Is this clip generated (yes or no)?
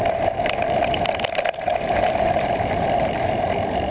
yes